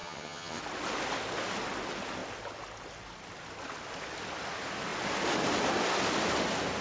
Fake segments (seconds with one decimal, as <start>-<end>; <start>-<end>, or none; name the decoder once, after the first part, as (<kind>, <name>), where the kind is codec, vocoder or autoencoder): 0.0-0.6 (vocoder, HiFi-GAN)